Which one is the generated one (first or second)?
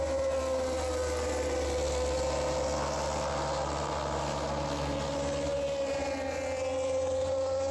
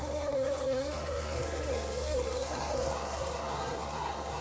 second